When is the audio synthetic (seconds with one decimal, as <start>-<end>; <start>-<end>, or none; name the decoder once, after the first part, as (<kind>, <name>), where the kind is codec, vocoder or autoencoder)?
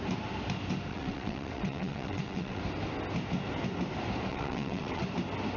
0.9-2.6 (vocoder, WaveNeXt); 4.3-5.0